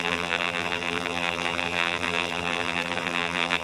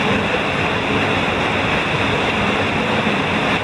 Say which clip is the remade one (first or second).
first